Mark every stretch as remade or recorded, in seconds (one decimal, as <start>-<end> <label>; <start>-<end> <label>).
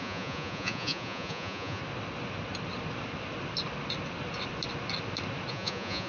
0.0-1.8 remade; 1.8-5.5 recorded; 5.5-6.1 remade